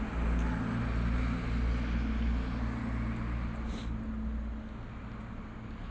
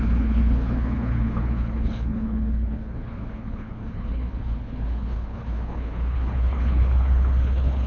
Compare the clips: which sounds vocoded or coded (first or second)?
second